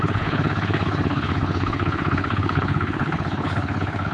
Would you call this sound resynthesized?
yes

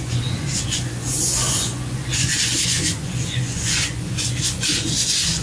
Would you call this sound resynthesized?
yes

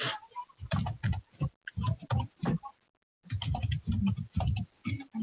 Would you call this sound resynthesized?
no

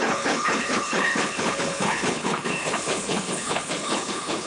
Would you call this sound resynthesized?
yes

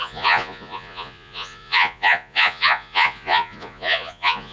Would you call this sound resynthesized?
yes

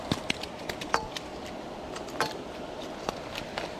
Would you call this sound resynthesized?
no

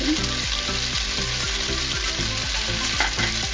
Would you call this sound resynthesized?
no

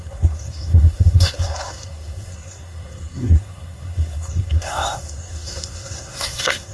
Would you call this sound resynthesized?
yes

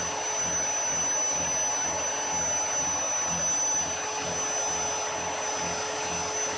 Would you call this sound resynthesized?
no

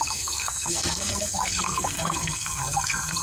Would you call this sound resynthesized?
yes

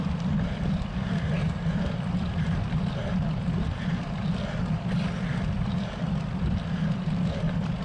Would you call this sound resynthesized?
yes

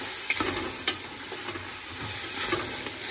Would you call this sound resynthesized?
no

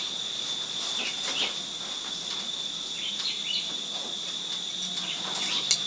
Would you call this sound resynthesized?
no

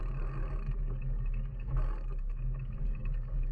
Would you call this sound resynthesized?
yes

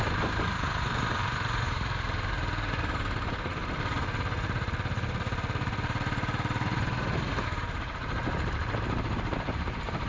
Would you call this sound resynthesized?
yes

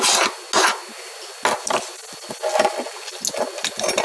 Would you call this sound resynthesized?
no